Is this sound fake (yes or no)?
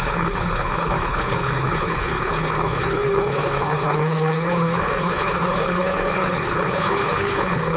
yes